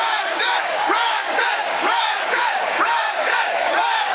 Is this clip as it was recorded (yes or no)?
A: no